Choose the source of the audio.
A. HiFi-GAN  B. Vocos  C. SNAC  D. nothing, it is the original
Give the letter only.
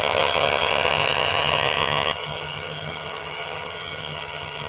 A